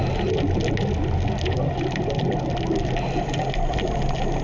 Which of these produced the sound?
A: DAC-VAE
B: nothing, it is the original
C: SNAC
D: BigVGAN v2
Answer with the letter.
B